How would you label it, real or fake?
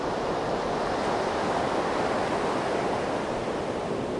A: real